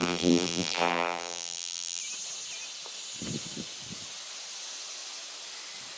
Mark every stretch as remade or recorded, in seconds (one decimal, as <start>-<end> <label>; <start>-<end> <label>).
0.0-2.0 remade; 2.0-6.0 recorded